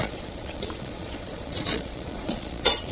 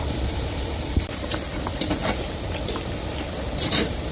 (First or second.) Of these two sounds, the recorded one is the second